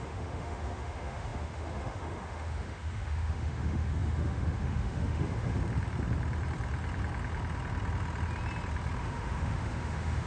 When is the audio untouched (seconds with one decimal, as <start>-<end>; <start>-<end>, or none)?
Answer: 5.6-9.0

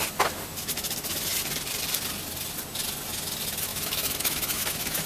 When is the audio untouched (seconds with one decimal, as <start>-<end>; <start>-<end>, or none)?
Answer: 0.0-3.7